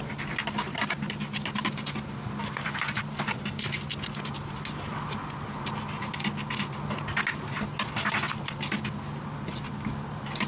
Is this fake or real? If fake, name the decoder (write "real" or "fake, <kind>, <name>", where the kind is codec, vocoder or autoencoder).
real